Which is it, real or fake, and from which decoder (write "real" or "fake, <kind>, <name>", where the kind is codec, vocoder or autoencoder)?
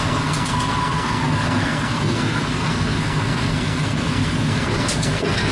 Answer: fake, codec, SNAC